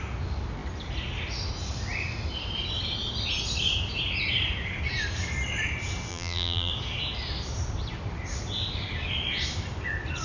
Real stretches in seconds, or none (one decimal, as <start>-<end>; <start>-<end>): 0.0-6.1; 6.7-10.2